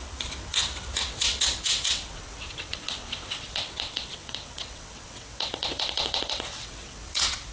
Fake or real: fake